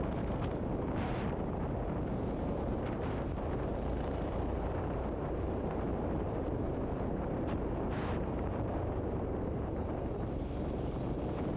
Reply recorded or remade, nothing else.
remade